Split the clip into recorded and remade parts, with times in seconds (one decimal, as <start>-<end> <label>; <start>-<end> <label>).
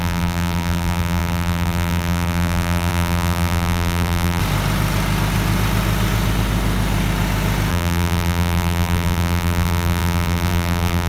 0.0-4.4 remade; 4.4-7.7 recorded; 7.7-11.1 remade